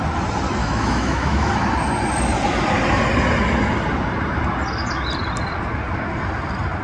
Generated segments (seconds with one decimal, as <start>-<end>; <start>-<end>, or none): 0.6-1.5

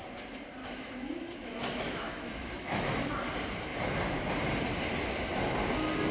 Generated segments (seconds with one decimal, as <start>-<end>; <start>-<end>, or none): 0.6-3.1

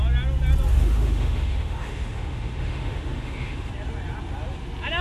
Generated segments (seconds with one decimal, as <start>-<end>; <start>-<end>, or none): 0.7-3.7

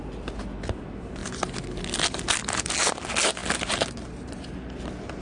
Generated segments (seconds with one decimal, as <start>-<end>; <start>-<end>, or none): none

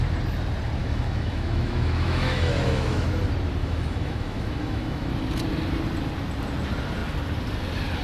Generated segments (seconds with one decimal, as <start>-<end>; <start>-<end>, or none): 0.8-3.2; 3.6-5.1

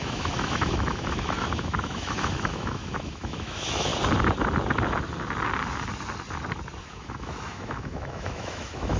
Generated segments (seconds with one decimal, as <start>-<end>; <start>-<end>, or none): 0.0-3.9; 6.8-9.0

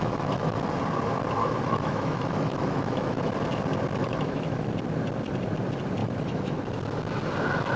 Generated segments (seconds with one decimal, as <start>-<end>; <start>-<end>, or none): 0.0-0.6; 1.4-3.3; 4.0-4.7; 6.0-6.6

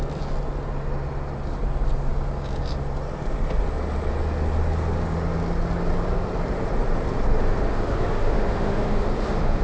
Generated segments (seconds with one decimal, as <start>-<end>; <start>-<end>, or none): 7.7-9.6